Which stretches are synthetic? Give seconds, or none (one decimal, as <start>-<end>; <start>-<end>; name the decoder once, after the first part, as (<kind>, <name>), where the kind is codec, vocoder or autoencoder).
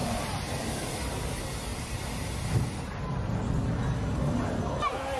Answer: 0.0-1.1 (vocoder, BigVGAN v2); 1.7-2.8